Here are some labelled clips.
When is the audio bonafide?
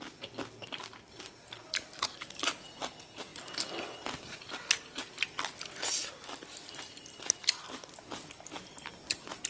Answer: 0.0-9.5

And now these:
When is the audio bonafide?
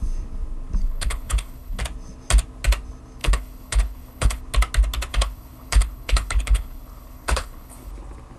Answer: 0.0-0.8; 1.8-3.2; 4.4-5.1; 7.9-8.4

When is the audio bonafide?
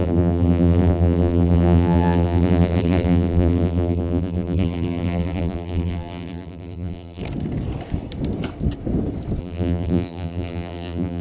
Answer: 7.2-9.4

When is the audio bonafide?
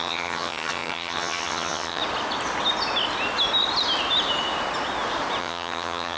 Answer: 2.0-5.4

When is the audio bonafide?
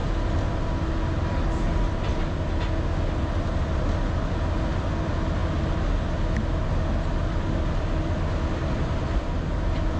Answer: 0.0-10.0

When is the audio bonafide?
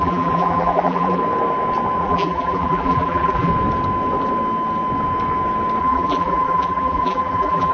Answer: 1.2-2.0; 3.5-5.8